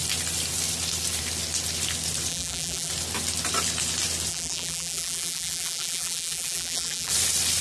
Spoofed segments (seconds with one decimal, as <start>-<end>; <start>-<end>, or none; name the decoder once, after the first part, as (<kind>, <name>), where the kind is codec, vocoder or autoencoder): 2.3-2.9 (vocoder, BigVGAN v2); 4.3-7.1